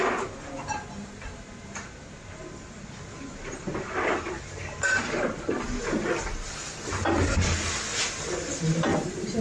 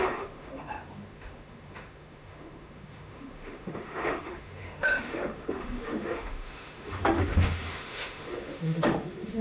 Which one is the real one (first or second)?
first